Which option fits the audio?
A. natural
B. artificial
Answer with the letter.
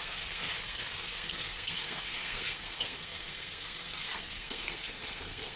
B